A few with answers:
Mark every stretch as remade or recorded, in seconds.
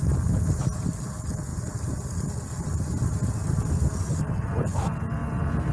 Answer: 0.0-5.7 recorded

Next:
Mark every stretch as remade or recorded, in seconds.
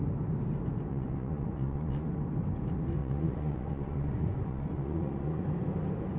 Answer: 0.0-0.9 recorded; 0.9-2.1 remade; 2.1-3.0 recorded; 3.0-5.4 remade; 5.4-6.2 recorded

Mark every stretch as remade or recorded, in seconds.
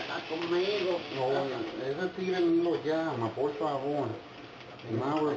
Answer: 0.0-5.4 recorded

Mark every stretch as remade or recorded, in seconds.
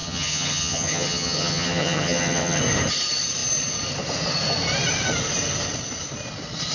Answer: 0.0-2.6 remade; 2.6-6.7 recorded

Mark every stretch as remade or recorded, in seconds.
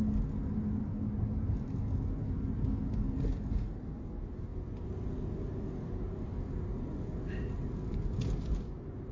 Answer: 0.0-9.1 recorded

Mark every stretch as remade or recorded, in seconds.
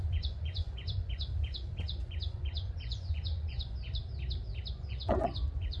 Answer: 0.0-4.0 remade; 4.0-4.7 recorded; 4.7-5.8 remade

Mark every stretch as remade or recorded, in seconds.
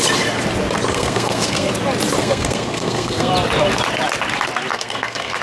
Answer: 0.0-0.9 recorded; 0.9-1.7 remade; 1.7-2.2 recorded; 2.2-3.3 remade; 3.3-4.7 recorded; 4.7-5.4 remade